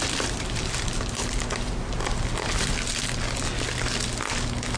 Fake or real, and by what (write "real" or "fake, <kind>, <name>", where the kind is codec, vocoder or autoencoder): real